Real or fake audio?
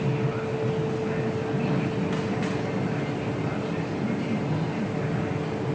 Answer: real